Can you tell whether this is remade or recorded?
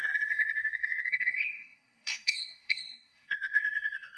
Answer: remade